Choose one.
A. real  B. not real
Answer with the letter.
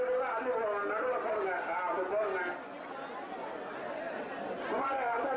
A